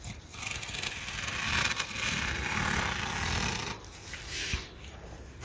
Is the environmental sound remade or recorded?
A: remade